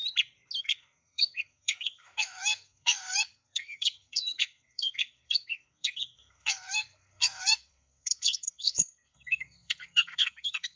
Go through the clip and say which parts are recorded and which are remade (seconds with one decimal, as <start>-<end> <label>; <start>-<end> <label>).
0.0-0.6 recorded; 0.6-10.8 remade